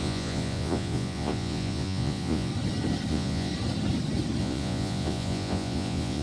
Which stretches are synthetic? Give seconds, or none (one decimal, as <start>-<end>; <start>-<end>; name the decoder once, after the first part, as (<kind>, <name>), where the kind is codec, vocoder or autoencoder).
0.0-2.5 (vocoder, Vocos); 3.1-3.5; 4.4-6.2

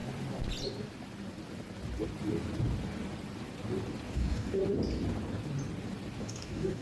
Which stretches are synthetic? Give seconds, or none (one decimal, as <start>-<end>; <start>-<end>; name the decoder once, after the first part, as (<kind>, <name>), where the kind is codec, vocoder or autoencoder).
4.1-4.6 (codec, DAC); 6.2-6.8

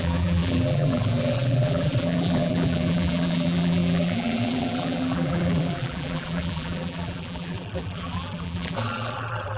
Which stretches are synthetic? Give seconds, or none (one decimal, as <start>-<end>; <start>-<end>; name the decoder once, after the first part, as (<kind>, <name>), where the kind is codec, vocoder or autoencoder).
0.0-9.6 (vocoder, BigVGAN v2)

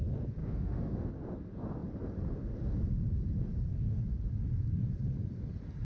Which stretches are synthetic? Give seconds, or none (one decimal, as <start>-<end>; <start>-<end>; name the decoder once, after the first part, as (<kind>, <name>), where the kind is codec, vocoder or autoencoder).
0.4-1.1 (autoencoder, DAC-VAE)

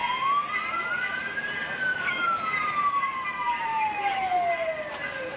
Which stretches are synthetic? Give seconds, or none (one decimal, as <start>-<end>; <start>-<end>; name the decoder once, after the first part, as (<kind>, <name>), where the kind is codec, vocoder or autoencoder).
1.9-2.4 (autoencoder, DAC-VAE); 3.7-4.3

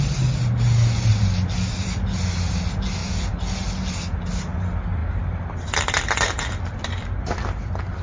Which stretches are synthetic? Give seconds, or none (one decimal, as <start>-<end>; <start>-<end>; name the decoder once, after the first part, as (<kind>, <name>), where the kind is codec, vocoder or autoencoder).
none

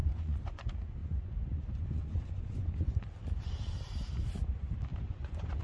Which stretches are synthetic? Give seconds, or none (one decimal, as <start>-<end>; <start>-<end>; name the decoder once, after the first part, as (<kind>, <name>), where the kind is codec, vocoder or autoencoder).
0.0-0.6 (vocoder, Vocos); 1.0-2.9; 4.9-5.6

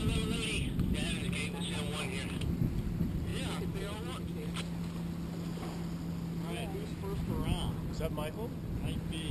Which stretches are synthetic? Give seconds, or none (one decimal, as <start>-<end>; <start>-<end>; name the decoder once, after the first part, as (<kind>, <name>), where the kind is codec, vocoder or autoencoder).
none